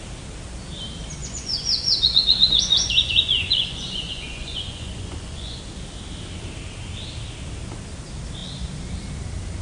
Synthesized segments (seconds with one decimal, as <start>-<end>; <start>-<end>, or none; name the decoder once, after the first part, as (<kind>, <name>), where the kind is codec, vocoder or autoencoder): 1.2-5.6 (vocoder, Vocos)